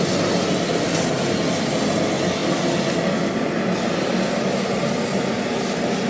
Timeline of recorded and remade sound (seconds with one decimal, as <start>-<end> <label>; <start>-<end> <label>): 0.0-6.1 recorded